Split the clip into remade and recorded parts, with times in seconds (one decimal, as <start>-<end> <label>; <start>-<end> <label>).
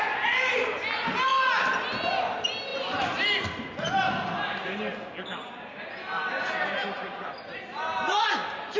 0.0-8.8 recorded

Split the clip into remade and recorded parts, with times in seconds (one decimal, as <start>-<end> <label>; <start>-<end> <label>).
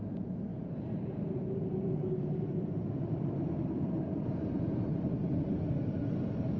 0.0-4.1 recorded; 4.1-5.6 remade; 5.6-6.6 recorded